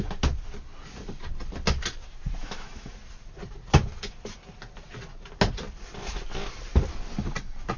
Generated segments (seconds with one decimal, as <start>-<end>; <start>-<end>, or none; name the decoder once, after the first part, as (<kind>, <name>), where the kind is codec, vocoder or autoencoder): 2.4-2.9 (autoencoder, DAC-VAE)

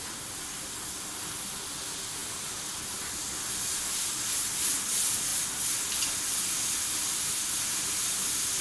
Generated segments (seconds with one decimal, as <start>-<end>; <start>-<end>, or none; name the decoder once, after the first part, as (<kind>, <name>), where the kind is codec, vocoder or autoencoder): none